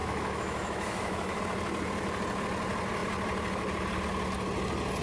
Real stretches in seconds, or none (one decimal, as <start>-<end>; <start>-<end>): 1.4-5.0